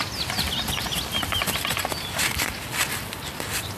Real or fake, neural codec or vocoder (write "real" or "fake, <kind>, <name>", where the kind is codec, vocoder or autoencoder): real